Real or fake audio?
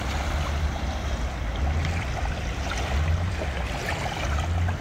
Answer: real